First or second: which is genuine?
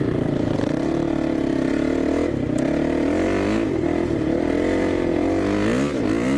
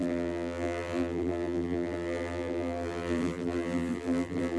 first